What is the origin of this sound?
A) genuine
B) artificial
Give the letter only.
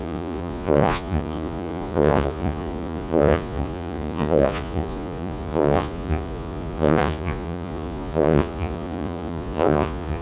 B